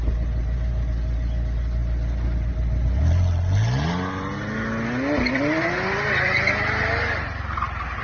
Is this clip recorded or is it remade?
recorded